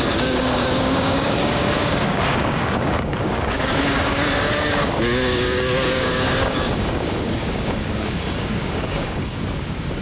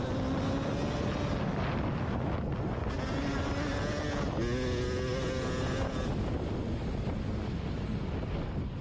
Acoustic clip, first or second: second